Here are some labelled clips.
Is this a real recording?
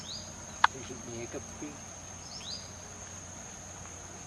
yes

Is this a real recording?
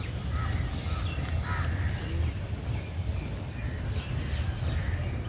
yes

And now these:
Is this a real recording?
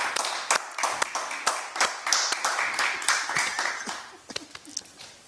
yes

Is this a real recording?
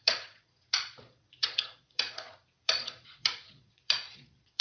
no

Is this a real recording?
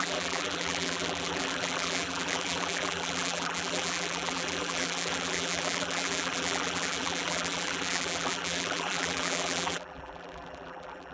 no